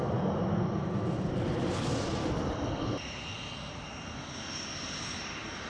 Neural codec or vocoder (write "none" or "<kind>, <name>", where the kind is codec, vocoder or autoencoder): none